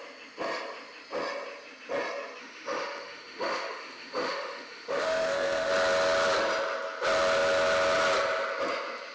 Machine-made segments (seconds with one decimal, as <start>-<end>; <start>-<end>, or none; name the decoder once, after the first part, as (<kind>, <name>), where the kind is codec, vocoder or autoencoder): 2.4-5.7 (autoencoder, DAC-VAE)